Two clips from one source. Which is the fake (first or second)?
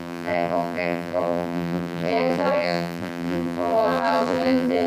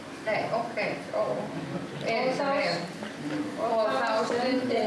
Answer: first